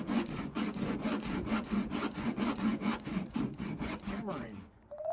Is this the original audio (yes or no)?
no